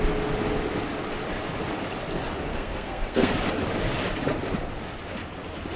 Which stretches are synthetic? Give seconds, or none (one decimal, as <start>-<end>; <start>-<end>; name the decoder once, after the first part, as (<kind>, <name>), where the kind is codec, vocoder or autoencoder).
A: 2.5-3.3 (codec, SNAC)